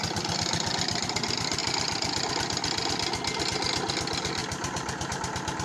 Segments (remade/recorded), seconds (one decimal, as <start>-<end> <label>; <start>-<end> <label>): 0.0-1.6 recorded; 1.6-2.3 remade; 2.3-4.4 recorded; 4.4-5.1 remade; 5.1-5.6 recorded